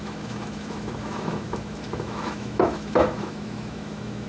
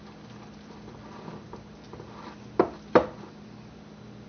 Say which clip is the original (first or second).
second